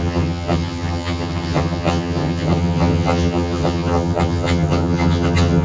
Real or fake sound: fake